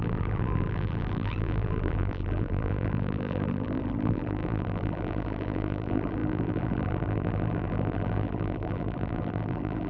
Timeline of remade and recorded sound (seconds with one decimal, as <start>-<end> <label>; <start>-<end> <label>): 0.0-9.9 remade